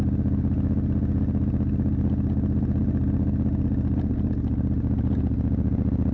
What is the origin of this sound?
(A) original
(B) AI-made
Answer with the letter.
A